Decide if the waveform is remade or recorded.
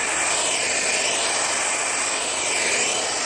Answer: recorded